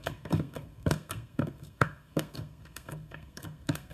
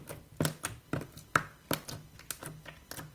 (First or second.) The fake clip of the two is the first